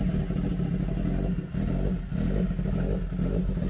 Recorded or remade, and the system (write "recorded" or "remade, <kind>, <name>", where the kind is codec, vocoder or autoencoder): recorded